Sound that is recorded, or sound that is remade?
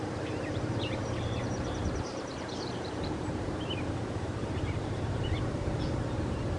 remade